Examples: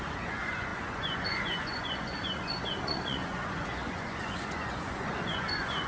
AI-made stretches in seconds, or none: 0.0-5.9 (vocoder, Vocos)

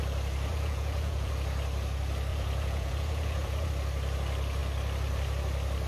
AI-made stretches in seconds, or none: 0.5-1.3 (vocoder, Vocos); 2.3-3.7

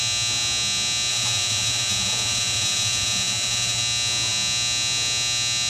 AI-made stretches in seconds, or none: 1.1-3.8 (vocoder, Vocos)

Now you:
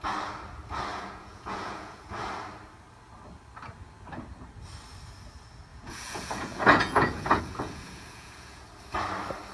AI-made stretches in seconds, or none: 0.9-2.2 (vocoder, Vocos); 5.7-8.7

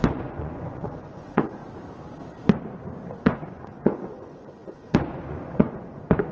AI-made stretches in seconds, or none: 0.0-1.6 (vocoder, Vocos); 3.2-6.3

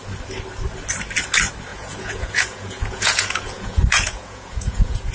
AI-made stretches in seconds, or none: 1.7-5.1 (vocoder, Vocos)